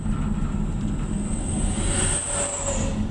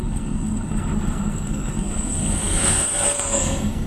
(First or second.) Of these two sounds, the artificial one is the second